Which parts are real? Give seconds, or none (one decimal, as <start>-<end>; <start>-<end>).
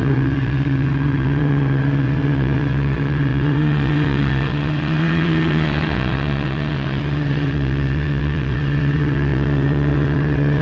none